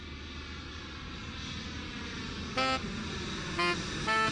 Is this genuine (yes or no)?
yes